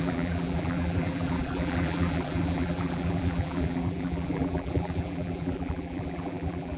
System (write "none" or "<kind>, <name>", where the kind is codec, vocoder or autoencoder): vocoder, BigVGAN v2